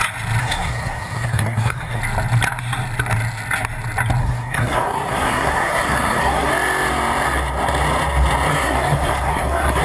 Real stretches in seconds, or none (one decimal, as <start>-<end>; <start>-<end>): 0.0-0.4; 2.0-4.2; 6.5-8.5